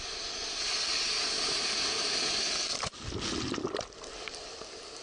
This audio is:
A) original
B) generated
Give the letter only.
A